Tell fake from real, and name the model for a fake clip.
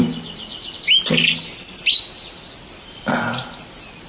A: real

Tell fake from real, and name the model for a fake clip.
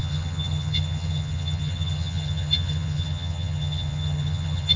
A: fake, vocoder, HiFi-GAN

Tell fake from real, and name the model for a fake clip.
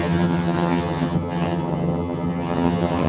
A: fake, vocoder, HiFi-GAN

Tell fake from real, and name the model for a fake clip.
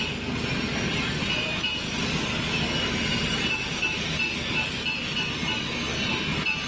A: real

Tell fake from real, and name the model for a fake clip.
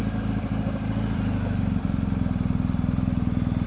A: real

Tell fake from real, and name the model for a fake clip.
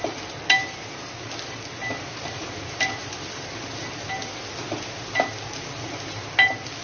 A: real